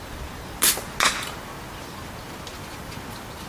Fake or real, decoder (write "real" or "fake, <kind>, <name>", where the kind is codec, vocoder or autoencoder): real